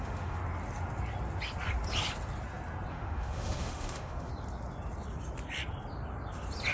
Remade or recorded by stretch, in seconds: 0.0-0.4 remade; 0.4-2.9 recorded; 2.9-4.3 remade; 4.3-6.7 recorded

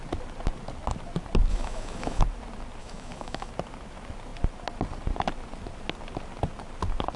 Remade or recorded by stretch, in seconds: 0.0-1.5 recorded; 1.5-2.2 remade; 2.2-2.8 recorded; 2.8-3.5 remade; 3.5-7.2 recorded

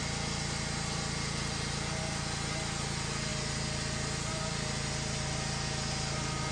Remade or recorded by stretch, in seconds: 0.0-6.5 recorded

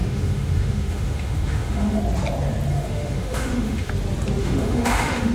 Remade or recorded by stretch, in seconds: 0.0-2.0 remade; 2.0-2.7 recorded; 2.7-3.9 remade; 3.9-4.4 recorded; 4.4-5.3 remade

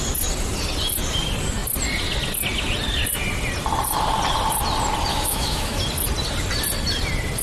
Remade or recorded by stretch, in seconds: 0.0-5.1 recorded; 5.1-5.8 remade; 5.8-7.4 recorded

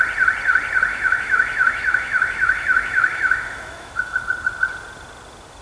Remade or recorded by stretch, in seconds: 0.0-0.9 recorded; 0.9-4.2 remade; 4.2-5.6 recorded

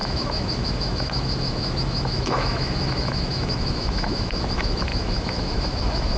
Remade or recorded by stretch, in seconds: 0.0-6.2 remade

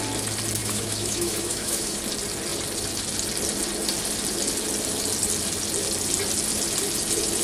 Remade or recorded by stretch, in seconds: 0.0-0.6 recorded; 0.6-2.0 remade; 2.0-7.4 recorded